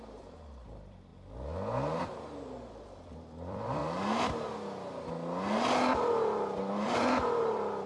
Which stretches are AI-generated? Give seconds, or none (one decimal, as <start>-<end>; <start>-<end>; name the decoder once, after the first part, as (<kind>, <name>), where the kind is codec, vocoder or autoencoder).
0.0-1.1 (vocoder, BigVGAN v2); 2.0-3.8; 6.7-7.9